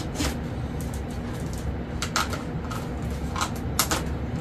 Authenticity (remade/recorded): recorded